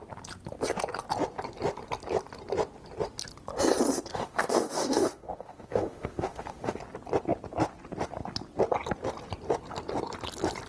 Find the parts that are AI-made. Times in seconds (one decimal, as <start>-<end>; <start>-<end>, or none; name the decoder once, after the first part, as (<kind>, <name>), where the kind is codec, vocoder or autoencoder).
4.1-6.8 (autoencoder, DAC-VAE)